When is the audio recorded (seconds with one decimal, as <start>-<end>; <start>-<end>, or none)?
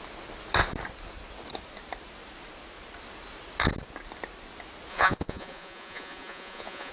0.0-4.9